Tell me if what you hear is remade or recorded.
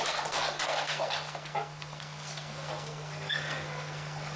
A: remade